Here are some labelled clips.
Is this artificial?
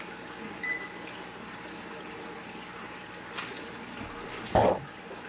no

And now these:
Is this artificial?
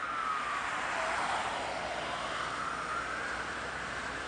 no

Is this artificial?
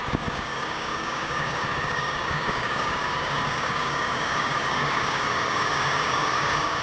yes